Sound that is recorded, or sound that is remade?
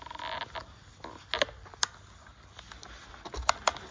recorded